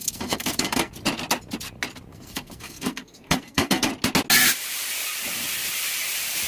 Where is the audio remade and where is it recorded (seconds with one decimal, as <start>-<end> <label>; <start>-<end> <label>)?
0.0-0.9 remade; 0.9-2.1 recorded; 2.1-3.9 remade; 3.9-6.5 recorded